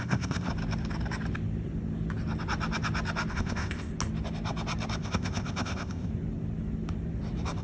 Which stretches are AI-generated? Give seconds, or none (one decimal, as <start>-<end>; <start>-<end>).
0.0-0.5; 3.3-3.9; 5.0-6.1